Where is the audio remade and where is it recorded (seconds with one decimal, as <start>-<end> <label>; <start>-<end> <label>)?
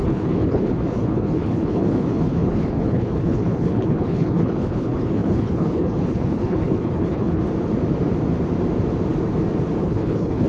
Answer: 0.0-7.4 remade; 7.4-9.8 recorded; 9.8-10.5 remade